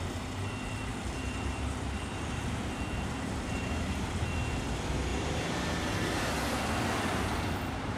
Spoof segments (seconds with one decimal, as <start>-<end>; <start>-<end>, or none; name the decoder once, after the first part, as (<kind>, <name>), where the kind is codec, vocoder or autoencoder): 0.9-3.6 (vocoder, BigVGAN v2); 5.1-6.3